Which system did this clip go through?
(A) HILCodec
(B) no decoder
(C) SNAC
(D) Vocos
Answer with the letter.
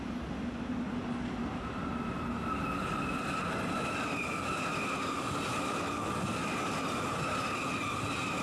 B